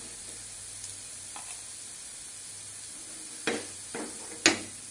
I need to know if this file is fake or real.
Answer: real